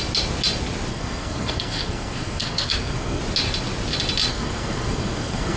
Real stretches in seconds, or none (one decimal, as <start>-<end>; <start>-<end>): 0.0-0.9; 3.2-4.3